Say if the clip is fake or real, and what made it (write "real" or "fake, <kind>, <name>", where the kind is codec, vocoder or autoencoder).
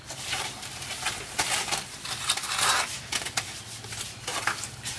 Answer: real